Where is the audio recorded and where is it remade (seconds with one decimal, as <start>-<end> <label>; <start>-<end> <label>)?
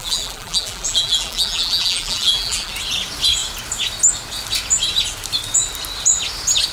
0.0-2.7 remade; 2.7-6.7 recorded